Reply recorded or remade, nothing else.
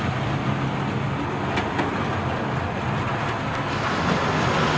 recorded